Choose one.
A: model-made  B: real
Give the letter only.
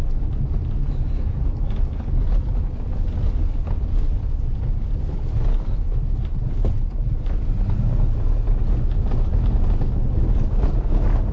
B